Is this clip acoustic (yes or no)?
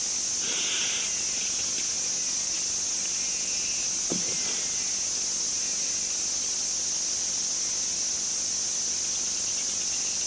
yes